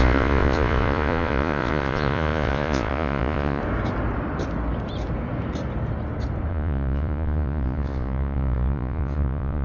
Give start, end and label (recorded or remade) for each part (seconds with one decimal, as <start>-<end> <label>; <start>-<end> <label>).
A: 0.0-3.6 remade; 3.6-6.5 recorded; 6.5-9.6 remade